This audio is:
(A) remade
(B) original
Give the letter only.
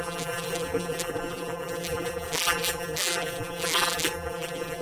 A